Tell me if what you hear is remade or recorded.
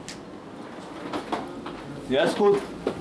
recorded